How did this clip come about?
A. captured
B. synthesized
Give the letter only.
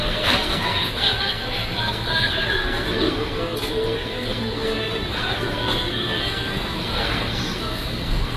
B